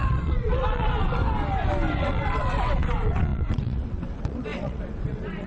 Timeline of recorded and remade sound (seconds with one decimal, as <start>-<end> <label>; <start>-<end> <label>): 0.0-1.2 remade; 1.2-2.0 recorded; 2.0-5.5 remade